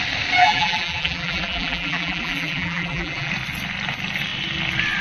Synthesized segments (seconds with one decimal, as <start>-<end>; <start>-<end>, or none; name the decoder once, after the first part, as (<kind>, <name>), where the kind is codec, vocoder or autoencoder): 0.4-3.3 (vocoder, BigVGAN v2)